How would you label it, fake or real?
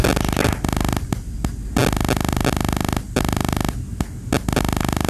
real